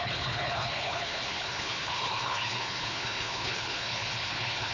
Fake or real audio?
fake